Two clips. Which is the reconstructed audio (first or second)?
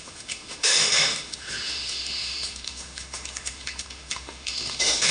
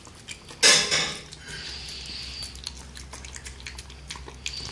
first